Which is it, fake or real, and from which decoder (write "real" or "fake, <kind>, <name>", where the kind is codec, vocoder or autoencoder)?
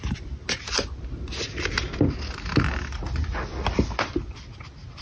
real